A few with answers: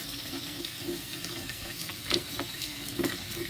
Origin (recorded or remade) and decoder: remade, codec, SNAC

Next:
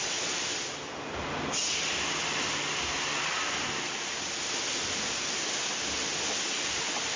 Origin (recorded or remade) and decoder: recorded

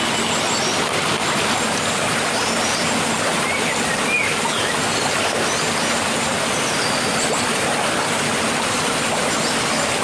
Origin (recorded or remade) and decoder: recorded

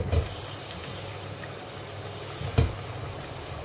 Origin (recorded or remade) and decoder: recorded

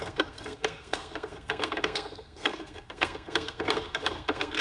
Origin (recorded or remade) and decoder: remade, codec, SNAC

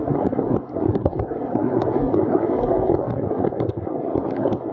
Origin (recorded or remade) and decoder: remade, codec, SNAC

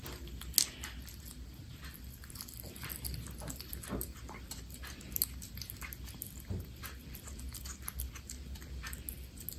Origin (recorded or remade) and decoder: recorded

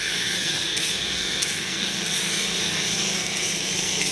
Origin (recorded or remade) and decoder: remade, codec, SNAC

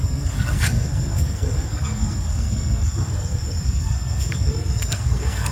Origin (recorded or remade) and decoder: remade, codec, SNAC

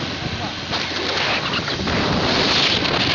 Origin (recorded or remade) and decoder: recorded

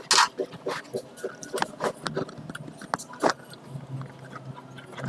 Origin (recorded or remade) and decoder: recorded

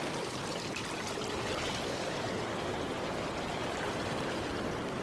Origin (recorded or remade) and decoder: recorded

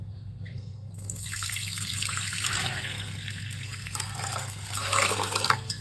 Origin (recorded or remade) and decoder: remade, codec, SNAC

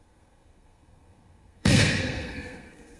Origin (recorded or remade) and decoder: remade, codec, SNAC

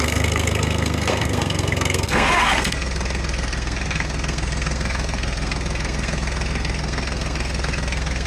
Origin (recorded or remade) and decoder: remade, codec, SNAC